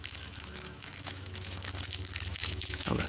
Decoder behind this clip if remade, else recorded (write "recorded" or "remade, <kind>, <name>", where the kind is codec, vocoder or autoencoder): remade, autoencoder, DAC-VAE